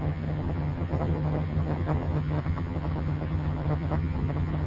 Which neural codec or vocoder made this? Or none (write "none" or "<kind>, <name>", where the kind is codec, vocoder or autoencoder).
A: vocoder, HiFi-GAN